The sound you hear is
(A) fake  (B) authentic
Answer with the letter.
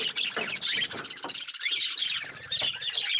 B